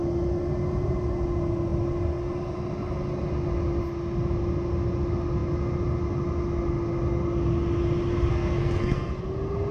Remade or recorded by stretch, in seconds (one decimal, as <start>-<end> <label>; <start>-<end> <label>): 0.0-8.3 recorded; 8.3-9.2 remade; 9.2-9.7 recorded